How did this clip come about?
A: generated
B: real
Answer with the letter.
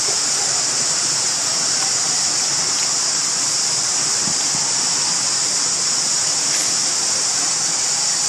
B